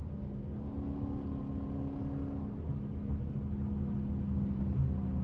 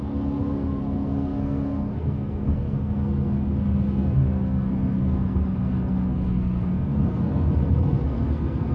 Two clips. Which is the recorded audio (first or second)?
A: first